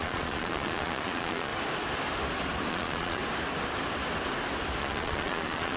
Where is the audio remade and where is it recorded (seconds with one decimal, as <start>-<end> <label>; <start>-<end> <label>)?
0.0-1.5 remade; 1.5-2.7 recorded; 2.7-3.2 remade; 3.2-4.8 recorded; 4.8-5.8 remade